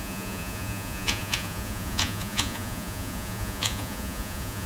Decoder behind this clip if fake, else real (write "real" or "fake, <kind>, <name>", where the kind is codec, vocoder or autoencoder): fake, vocoder, Vocos